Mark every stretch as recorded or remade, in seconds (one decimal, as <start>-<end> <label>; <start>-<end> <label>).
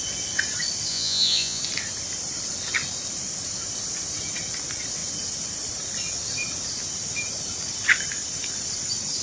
0.0-0.9 recorded; 0.9-1.6 remade; 1.6-9.2 recorded